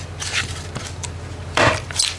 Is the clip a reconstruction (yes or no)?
no